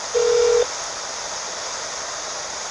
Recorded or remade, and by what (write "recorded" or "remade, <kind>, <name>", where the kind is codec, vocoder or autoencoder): recorded